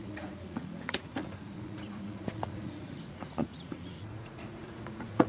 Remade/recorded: remade